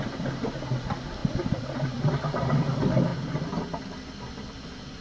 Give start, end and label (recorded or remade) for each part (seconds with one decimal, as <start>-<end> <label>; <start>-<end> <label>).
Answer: 0.0-5.0 recorded

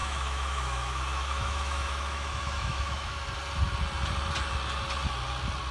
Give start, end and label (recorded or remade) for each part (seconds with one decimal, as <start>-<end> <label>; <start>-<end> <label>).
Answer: 0.0-3.2 remade; 3.2-5.7 recorded